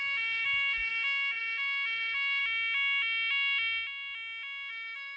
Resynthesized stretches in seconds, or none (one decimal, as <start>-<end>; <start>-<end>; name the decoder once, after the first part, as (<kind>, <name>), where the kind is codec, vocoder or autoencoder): 0.0-2.4 (autoencoder, DAC-VAE); 4.7-5.2